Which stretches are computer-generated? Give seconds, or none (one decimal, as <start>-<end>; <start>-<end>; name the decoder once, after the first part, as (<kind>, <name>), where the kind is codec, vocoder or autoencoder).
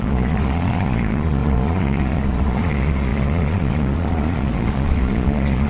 0.0-5.7 (vocoder, Vocos)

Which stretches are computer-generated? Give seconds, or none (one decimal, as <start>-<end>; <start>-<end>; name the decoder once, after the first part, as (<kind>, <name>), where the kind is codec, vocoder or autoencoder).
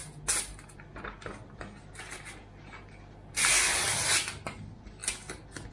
none